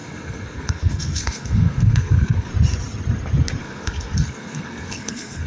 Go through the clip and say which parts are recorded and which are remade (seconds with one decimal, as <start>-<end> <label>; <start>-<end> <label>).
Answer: 0.0-2.5 remade; 2.5-3.6 recorded; 3.6-5.5 remade